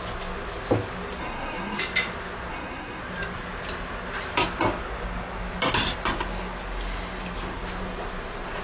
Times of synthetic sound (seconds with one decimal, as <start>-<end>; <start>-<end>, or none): 1.2-1.8; 2.5-3.0